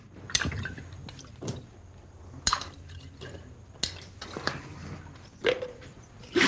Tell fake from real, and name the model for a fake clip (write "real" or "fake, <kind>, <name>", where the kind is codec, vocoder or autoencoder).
real